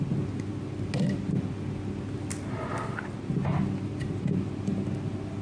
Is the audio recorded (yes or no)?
yes